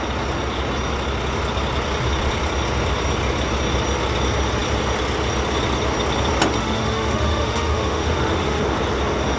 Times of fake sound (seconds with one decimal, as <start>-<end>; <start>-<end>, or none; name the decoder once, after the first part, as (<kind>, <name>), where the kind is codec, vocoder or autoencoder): 6.6-8.6 (autoencoder, DAC-VAE)